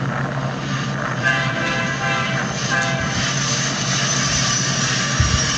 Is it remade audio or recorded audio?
recorded